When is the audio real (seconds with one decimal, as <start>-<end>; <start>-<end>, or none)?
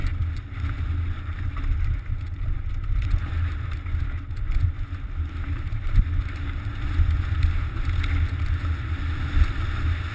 0.0-10.1